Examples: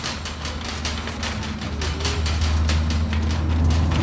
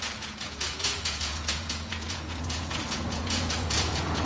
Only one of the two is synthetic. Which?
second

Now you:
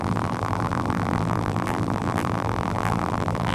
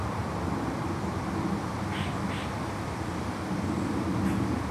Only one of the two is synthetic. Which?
first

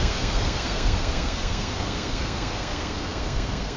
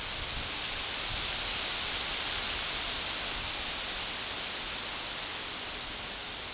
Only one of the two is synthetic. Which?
first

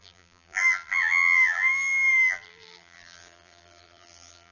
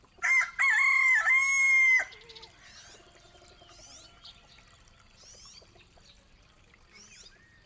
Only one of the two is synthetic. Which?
first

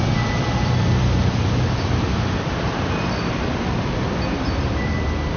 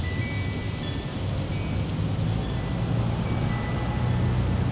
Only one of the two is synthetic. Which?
first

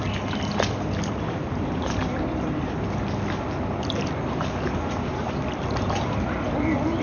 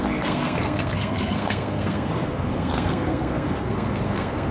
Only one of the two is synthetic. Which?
second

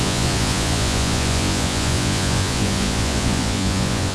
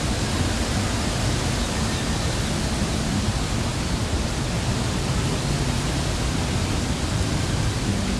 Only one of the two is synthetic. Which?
first